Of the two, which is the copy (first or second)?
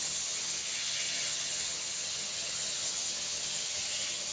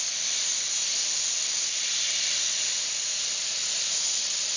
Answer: first